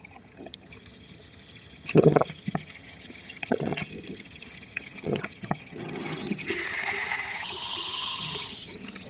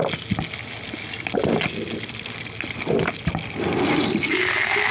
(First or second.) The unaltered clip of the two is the second